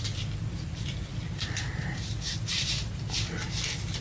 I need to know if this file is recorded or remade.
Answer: recorded